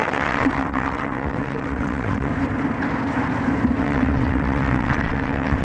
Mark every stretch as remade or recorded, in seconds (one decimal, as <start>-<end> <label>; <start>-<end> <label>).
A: 0.0-2.3 remade; 2.3-3.8 recorded; 3.8-5.6 remade